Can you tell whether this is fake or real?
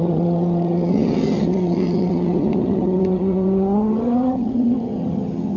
fake